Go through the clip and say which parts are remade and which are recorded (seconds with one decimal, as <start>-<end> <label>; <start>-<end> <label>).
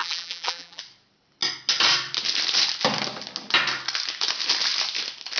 0.0-0.8 remade; 0.8-5.4 recorded